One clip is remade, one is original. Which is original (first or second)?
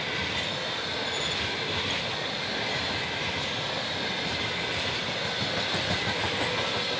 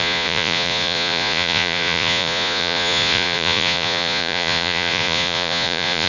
first